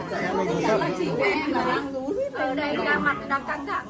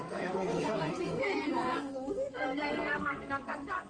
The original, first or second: first